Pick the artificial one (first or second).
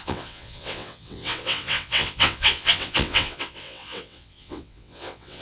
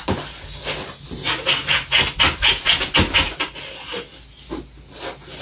first